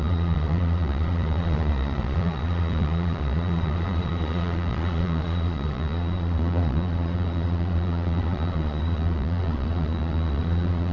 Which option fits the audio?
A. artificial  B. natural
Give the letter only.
A